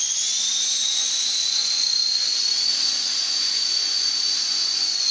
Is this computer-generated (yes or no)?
yes